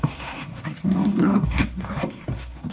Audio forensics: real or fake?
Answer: fake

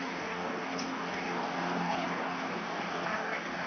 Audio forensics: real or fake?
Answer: fake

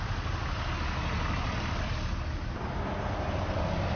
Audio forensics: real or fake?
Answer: real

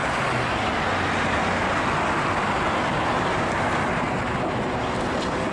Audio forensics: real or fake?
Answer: real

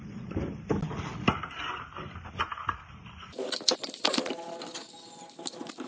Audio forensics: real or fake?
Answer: real